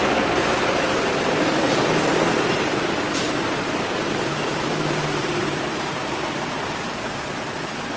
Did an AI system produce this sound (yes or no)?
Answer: yes